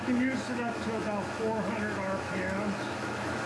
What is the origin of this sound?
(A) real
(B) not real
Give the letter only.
B